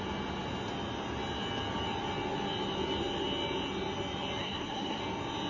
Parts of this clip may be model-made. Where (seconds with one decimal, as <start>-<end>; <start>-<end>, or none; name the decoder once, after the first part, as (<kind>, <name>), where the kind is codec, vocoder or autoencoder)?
4.4-5.0 (codec, SNAC)